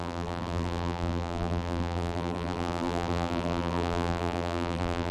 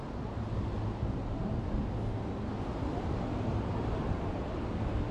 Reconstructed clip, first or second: first